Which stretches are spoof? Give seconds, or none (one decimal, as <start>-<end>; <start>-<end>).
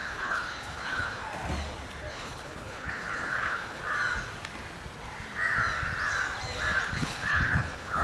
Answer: 0.0-1.2; 2.1-3.8; 6.9-8.0